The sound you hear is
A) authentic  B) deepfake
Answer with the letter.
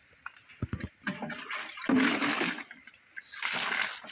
A